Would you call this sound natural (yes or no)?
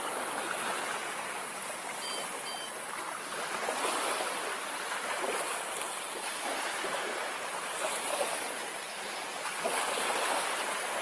yes